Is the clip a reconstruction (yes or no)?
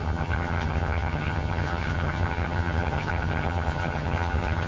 yes